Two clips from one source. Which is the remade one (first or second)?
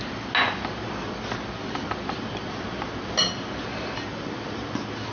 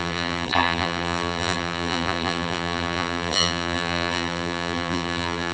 second